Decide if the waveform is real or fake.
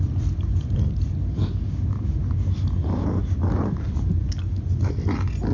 real